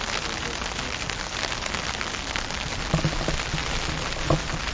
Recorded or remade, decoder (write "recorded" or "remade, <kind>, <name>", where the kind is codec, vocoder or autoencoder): recorded